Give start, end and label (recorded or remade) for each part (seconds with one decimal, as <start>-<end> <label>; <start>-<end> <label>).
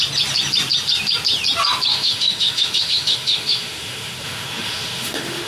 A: 0.0-1.9 recorded; 1.9-5.5 remade